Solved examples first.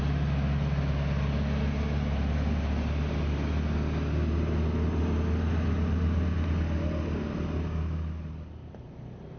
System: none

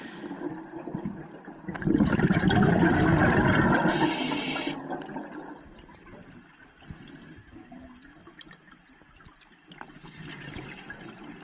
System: none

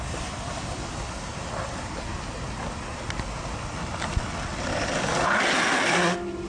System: none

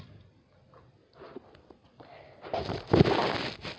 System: none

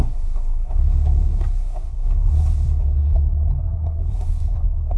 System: codec, SNAC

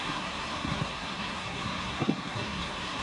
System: codec, SNAC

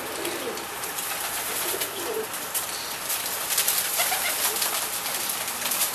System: none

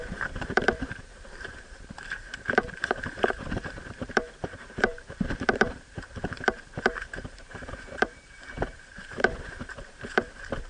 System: vocoder, BigVGAN v2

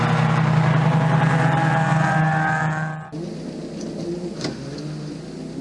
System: none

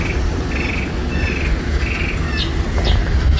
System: none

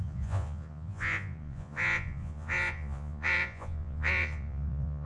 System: vocoder, Vocos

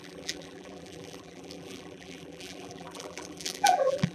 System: vocoder, BigVGAN v2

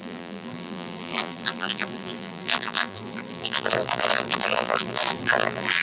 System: vocoder, BigVGAN v2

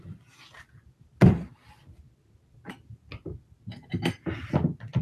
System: none